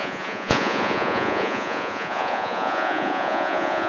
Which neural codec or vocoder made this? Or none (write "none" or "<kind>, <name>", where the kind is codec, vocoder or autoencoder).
vocoder, Vocos